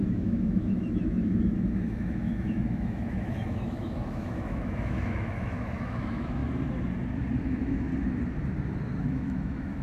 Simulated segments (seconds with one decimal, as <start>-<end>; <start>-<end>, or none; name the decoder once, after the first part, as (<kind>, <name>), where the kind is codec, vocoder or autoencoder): 0.0-6.4 (autoencoder, DAC-VAE); 7.4-7.9; 9.0-9.8